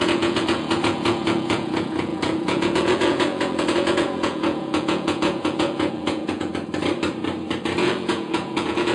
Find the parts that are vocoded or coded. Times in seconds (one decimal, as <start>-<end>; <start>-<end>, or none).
0.0-6.5; 7.8-8.9